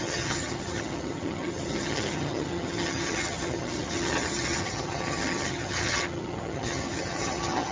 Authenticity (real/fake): fake